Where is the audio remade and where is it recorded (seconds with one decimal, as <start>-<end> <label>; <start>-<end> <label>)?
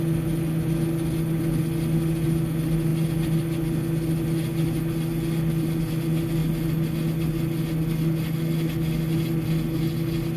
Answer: 0.0-10.4 recorded